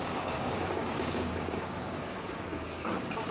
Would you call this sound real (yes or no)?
no